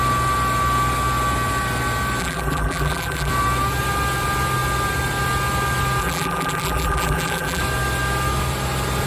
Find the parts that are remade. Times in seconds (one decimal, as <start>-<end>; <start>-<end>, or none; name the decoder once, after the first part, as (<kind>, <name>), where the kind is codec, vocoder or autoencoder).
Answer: 2.2-3.3 (vocoder, BigVGAN v2); 6.0-7.6